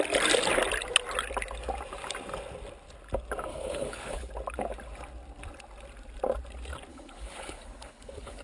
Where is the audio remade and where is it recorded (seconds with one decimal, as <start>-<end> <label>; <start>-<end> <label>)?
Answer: 0.0-3.5 recorded; 3.5-4.3 remade; 4.3-6.9 recorded; 6.9-8.4 remade